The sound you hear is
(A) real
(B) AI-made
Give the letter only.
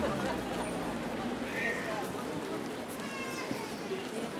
A